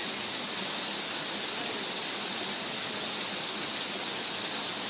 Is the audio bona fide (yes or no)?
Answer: yes